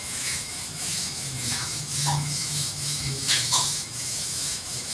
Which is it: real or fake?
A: fake